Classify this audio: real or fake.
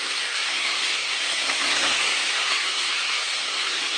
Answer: fake